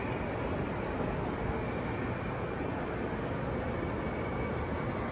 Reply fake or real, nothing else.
real